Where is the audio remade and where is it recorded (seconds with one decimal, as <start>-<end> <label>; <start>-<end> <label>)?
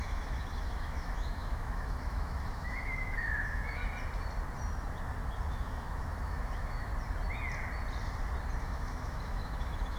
0.0-3.8 remade; 3.8-5.5 recorded; 5.5-6.9 remade; 6.9-8.6 recorded; 8.6-10.0 remade